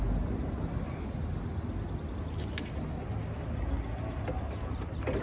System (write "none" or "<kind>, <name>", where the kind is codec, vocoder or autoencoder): none